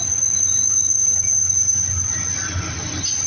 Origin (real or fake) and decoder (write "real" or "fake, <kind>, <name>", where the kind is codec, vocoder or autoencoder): real